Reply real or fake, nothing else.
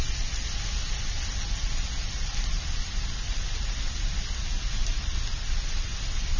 real